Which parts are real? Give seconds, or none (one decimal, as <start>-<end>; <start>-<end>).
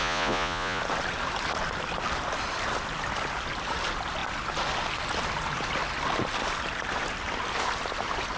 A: 0.8-8.4